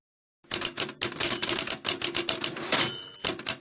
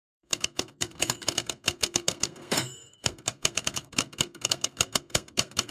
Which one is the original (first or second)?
first